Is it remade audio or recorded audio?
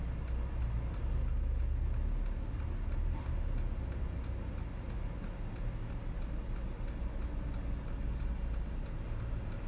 recorded